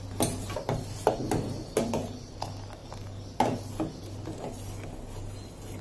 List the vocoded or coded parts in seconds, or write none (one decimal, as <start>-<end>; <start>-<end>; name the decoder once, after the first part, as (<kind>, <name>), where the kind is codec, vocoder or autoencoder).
none